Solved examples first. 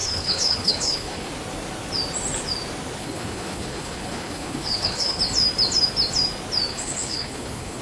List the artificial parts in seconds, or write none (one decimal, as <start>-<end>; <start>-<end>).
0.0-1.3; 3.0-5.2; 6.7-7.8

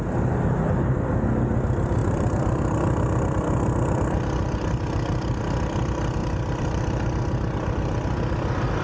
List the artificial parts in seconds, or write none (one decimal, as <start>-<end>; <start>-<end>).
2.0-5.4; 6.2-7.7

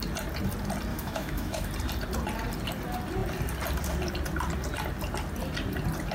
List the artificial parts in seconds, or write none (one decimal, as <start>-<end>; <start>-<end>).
0.9-1.7

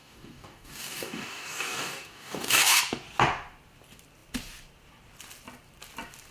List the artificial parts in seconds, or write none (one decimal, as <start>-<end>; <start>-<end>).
0.0-2.8

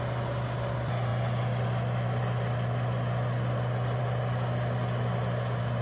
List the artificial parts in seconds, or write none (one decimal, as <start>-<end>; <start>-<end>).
none

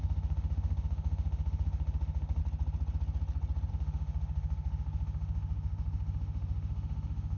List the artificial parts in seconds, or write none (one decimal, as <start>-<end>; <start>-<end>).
0.0-2.4; 3.7-7.4